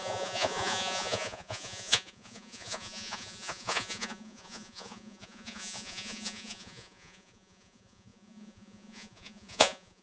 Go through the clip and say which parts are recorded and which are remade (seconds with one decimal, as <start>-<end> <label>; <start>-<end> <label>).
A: 0.0-10.0 remade